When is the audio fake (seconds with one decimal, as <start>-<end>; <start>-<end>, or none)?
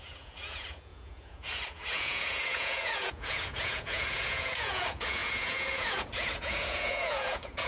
0.0-7.7